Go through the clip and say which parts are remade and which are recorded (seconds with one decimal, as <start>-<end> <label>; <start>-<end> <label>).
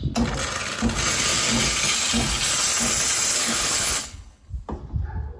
0.0-3.3 recorded; 3.3-4.5 remade; 4.5-5.4 recorded